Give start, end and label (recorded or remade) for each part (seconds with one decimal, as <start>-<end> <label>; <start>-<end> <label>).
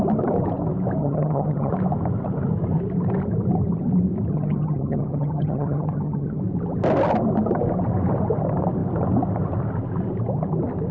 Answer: 0.0-1.0 recorded; 1.0-1.7 remade; 1.7-4.3 recorded; 4.3-6.4 remade; 6.4-10.9 recorded